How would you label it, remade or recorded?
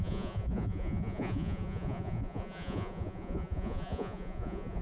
remade